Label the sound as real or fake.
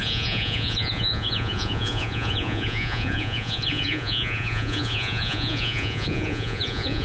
fake